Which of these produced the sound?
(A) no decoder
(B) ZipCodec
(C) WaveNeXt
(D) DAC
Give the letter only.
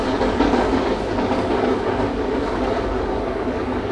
D